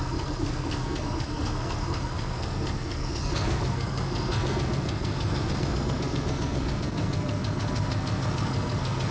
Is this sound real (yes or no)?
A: no